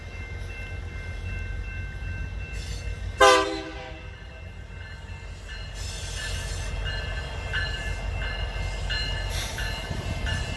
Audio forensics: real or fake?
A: real